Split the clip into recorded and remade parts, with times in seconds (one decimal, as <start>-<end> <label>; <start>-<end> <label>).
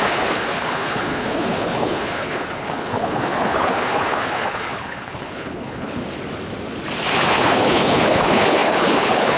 0.0-6.0 remade; 6.0-7.2 recorded; 7.2-9.4 remade